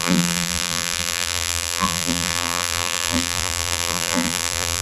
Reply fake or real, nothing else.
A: fake